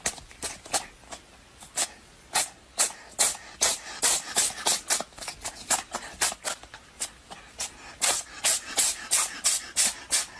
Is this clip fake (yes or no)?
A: no